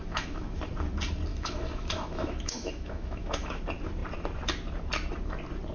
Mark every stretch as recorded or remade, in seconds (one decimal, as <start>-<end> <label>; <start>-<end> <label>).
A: 0.0-0.6 remade; 0.6-1.3 recorded; 1.3-3.6 remade; 3.6-5.7 recorded